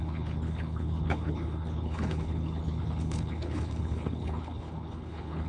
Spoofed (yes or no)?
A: yes